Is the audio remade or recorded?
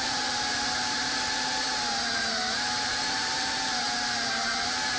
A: remade